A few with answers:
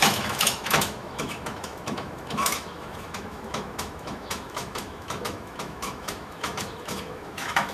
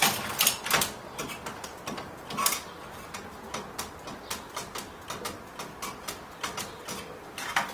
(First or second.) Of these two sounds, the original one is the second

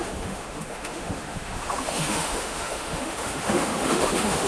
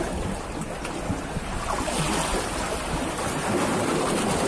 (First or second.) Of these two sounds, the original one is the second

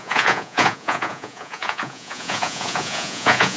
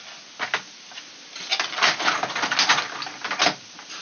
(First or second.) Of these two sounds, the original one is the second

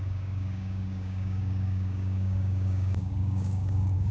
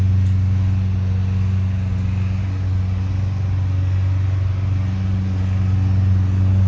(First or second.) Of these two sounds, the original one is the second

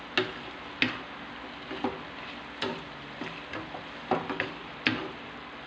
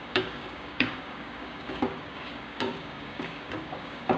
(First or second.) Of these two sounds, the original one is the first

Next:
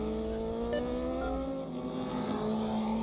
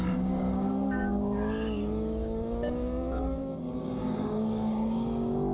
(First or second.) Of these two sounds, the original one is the first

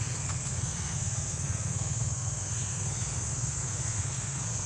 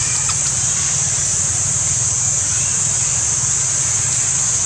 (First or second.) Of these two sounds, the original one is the second